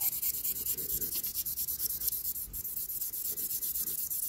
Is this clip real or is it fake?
real